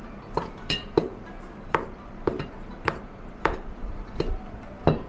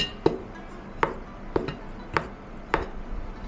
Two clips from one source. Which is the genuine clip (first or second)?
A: second